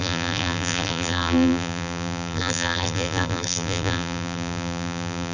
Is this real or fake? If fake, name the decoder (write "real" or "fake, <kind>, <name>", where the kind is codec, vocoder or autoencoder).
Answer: fake, vocoder, BigVGAN v2